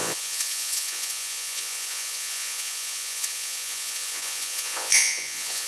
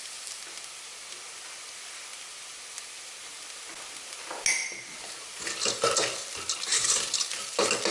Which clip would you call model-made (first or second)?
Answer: first